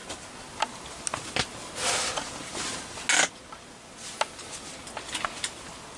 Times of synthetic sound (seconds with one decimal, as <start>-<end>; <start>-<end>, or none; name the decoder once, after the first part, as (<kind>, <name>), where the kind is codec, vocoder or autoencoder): none